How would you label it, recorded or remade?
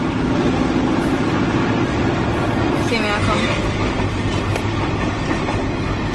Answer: recorded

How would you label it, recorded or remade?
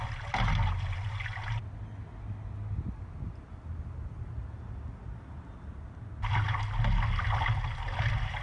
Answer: recorded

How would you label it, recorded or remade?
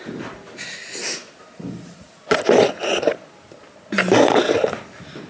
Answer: recorded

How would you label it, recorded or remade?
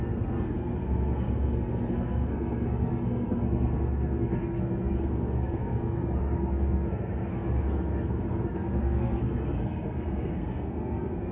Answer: remade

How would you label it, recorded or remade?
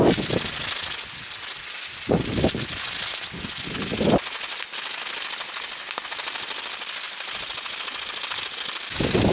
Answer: recorded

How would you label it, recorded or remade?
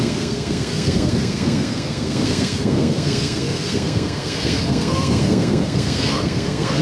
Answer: remade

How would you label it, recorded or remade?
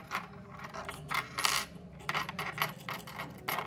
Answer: recorded